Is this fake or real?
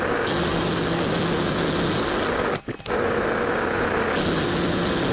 real